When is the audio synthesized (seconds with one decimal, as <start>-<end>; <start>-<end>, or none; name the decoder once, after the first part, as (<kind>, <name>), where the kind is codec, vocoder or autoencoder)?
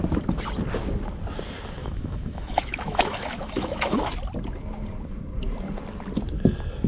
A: 1.8-4.1 (autoencoder, DAC-VAE)